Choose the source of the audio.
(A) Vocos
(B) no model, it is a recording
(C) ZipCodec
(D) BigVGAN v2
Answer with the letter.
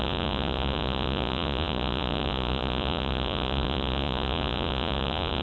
A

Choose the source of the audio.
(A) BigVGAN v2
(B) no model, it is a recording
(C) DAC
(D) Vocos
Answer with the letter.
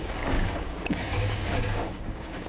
C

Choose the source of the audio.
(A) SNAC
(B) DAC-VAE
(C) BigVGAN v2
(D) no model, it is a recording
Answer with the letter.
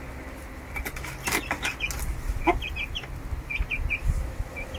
D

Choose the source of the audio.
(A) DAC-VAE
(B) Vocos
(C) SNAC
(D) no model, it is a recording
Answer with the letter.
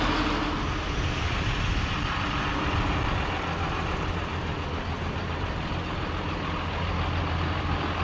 D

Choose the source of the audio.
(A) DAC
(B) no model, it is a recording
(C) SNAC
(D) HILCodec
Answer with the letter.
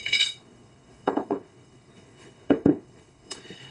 D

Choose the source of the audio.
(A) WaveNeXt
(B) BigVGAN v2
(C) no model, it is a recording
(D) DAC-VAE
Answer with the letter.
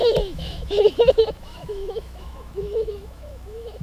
D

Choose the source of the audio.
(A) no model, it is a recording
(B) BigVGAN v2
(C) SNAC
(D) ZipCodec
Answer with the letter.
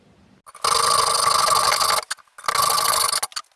A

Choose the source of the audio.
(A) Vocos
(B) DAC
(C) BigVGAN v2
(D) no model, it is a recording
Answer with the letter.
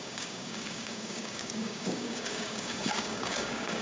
B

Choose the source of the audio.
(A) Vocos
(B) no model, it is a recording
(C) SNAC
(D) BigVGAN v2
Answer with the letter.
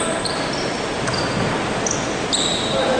B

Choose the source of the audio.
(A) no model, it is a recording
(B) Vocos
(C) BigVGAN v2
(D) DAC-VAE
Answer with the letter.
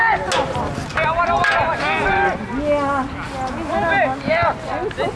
A